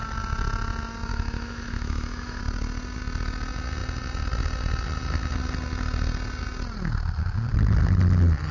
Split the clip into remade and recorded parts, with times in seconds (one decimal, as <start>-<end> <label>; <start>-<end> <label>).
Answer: 0.0-1.1 recorded; 1.1-2.4 remade; 2.4-8.5 recorded